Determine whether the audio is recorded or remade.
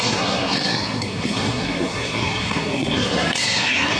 remade